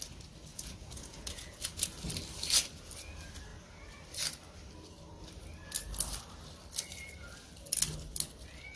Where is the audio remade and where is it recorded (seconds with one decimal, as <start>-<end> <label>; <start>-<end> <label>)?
0.0-0.5 recorded; 0.5-1.8 remade; 1.8-8.8 recorded